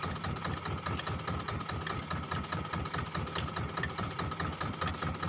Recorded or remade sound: remade